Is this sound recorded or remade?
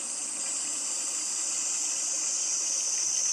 recorded